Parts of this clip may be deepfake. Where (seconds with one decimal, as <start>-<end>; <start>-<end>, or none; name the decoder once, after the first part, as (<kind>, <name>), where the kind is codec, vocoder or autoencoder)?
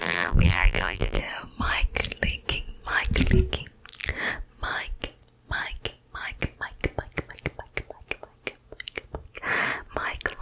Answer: 0.0-1.2 (vocoder, BigVGAN v2)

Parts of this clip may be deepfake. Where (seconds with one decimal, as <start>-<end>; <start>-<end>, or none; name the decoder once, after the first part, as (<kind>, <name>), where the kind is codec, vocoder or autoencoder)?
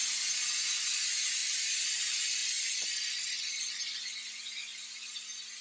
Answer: 1.4-2.0 (vocoder, BigVGAN v2); 2.4-3.5; 4.7-5.6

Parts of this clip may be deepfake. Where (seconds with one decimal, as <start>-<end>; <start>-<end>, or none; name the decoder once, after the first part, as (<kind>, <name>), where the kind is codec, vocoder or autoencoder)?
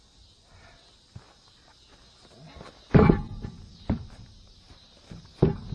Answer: 3.7-5.0 (vocoder, BigVGAN v2)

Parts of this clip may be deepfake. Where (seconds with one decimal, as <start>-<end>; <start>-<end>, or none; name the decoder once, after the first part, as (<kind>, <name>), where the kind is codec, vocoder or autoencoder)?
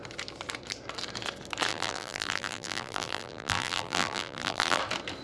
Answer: 1.7-4.8 (vocoder, BigVGAN v2)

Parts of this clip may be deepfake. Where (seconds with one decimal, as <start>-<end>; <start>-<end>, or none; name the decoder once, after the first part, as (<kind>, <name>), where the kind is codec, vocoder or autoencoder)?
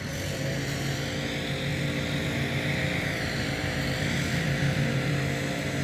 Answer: 1.7-5.2 (vocoder, BigVGAN v2)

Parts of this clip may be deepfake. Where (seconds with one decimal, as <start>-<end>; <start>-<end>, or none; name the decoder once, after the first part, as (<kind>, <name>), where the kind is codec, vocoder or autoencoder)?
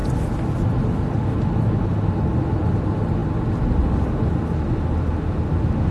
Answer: none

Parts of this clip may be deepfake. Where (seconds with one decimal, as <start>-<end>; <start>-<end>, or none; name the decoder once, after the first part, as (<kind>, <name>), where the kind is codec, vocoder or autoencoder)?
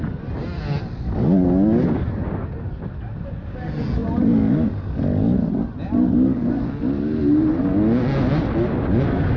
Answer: none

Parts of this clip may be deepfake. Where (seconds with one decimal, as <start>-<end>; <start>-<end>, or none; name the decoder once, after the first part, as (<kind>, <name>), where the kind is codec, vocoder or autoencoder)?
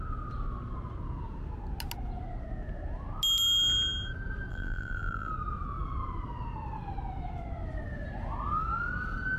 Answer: 4.5-5.3 (vocoder, BigVGAN v2)